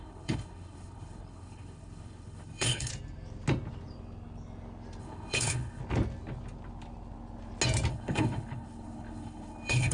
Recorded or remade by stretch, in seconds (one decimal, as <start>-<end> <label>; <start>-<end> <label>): 0.0-2.9 remade; 2.9-5.0 recorded; 5.0-5.8 remade; 5.8-7.9 recorded; 7.9-9.9 remade